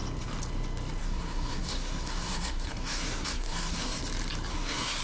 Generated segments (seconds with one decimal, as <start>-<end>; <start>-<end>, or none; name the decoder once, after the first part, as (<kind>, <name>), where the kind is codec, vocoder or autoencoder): 1.0-4.0 (codec, SNAC); 4.5-5.0